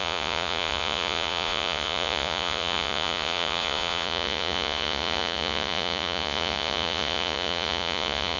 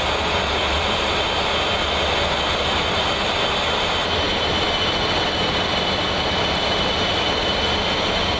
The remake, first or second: first